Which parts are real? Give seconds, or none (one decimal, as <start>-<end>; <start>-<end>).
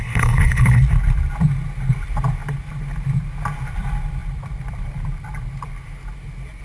0.8-6.6